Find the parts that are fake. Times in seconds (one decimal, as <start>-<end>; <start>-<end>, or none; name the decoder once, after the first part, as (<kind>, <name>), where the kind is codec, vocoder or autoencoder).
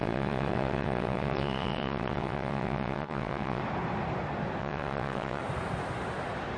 0.0-3.6 (vocoder, WaveNeXt); 4.6-5.4